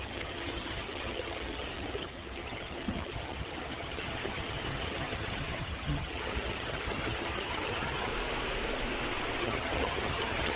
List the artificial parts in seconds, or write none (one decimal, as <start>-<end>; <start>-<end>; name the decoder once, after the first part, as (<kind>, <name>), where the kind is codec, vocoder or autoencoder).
0.0-8.1 (vocoder, HiFi-GAN); 9.4-10.6

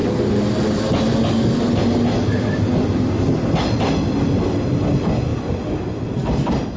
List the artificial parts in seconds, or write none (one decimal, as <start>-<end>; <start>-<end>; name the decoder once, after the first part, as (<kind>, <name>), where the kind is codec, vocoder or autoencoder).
none